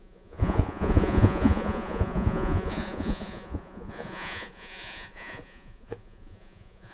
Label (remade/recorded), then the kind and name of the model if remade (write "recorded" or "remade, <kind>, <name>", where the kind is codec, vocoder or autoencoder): remade, vocoder, Vocos